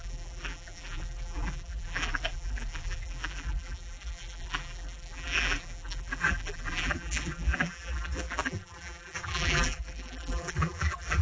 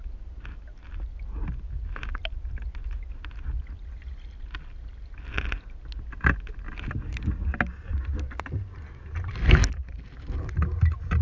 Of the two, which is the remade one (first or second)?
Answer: first